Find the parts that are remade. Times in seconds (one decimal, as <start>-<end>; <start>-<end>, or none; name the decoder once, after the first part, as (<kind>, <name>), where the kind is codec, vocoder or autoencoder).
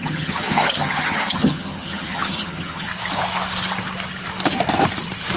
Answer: 0.0-2.9 (vocoder, HiFi-GAN)